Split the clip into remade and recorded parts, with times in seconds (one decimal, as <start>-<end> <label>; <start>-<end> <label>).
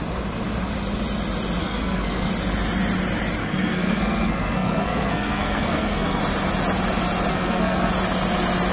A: 0.0-1.6 recorded; 1.6-2.3 remade; 2.3-3.4 recorded; 3.4-6.2 remade; 6.2-7.3 recorded; 7.3-7.9 remade; 7.9-8.7 recorded